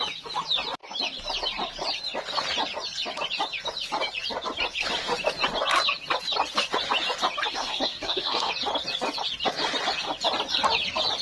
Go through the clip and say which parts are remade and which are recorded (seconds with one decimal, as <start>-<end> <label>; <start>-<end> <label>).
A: 0.0-7.5 recorded; 7.5-8.5 remade; 8.5-11.2 recorded